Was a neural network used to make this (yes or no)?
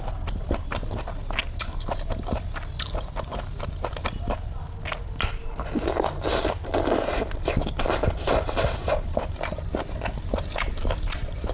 no